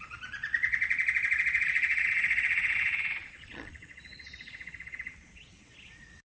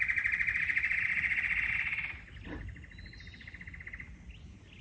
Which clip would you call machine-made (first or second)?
first